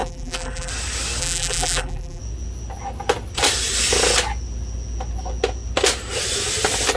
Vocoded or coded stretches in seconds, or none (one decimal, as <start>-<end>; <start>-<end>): 0.0-0.7; 1.2-2.2